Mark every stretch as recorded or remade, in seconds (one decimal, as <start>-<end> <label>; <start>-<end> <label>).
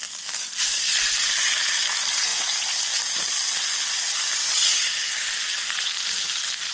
0.0-6.7 recorded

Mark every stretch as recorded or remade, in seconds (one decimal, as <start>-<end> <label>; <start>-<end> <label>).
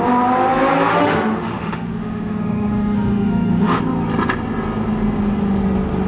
0.0-0.9 recorded; 0.9-3.8 remade; 3.8-6.1 recorded